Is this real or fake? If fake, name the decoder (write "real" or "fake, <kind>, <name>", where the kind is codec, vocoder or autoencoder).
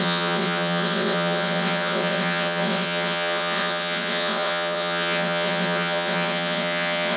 fake, vocoder, WaveNeXt